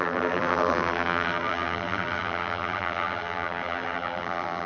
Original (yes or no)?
no